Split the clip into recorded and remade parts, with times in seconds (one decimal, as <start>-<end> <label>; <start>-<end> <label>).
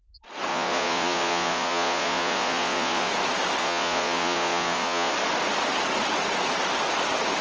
0.0-0.5 recorded; 0.5-3.1 remade; 3.1-3.6 recorded; 3.6-5.1 remade; 5.1-7.4 recorded